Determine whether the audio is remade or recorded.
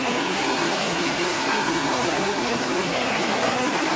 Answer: remade